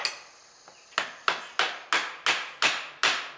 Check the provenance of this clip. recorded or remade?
recorded